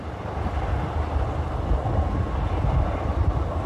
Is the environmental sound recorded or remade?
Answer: recorded